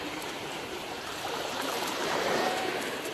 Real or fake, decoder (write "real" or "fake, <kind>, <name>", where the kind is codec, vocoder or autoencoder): fake, vocoder, BigVGAN v2